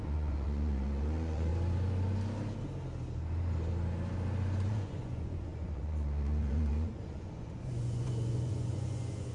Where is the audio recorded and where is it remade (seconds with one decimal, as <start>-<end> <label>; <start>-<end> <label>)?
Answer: 0.0-1.5 remade; 1.5-4.7 recorded; 4.7-9.3 remade

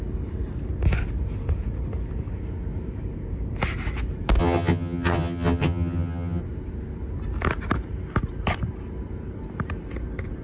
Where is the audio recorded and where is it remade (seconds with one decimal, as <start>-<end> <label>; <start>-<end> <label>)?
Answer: 0.0-4.4 recorded; 4.4-6.4 remade; 6.4-10.4 recorded

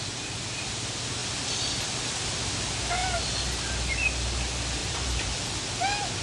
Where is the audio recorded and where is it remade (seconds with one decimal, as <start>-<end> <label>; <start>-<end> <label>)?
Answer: 0.0-4.8 recorded; 4.8-5.4 remade; 5.4-6.2 recorded

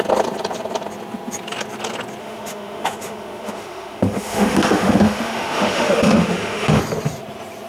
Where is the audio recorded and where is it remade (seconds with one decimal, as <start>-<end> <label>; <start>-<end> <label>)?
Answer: 0.0-2.2 recorded; 2.2-6.8 remade; 6.8-7.7 recorded

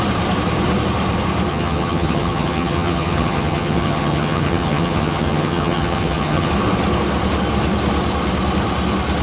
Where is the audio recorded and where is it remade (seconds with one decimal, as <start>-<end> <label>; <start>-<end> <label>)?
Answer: 0.0-1.5 recorded; 1.5-6.5 remade; 6.5-9.2 recorded